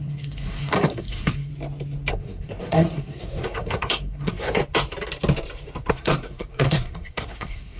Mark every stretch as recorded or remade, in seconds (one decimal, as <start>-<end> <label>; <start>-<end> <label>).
0.0-1.5 remade; 1.5-2.1 recorded; 2.1-4.6 remade; 4.6-5.9 recorded; 5.9-7.8 remade

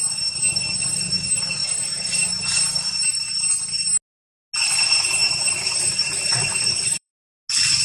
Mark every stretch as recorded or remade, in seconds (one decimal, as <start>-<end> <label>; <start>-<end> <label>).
0.0-1.6 recorded; 1.6-2.4 remade; 2.4-5.2 recorded; 5.2-7.1 remade; 7.1-7.8 recorded

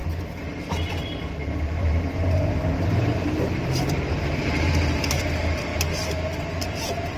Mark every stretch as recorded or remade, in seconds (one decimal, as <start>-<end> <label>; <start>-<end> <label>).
0.0-5.7 remade; 5.7-7.2 recorded